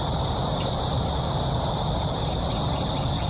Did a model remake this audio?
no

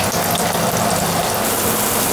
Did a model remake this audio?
no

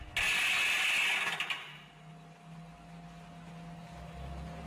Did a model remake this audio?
no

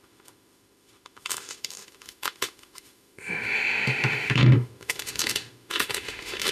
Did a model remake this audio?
yes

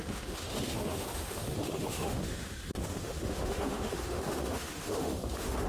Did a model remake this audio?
yes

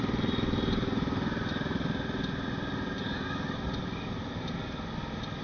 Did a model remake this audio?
no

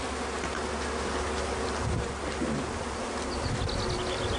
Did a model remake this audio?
no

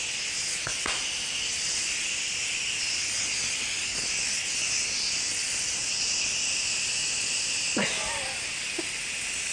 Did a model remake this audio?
no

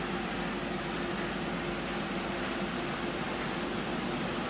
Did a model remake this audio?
no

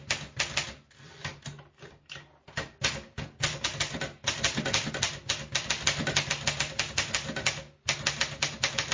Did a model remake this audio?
no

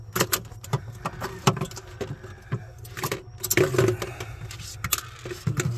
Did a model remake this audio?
no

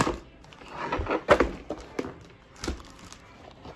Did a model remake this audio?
no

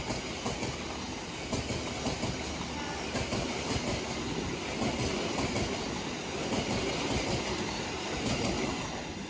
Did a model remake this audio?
no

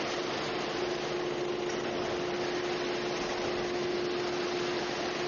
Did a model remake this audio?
no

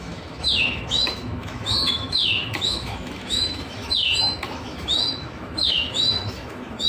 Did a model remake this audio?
yes